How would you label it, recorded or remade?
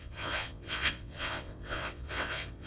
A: remade